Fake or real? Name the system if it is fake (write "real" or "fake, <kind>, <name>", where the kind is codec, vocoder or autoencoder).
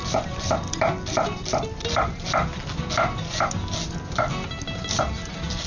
real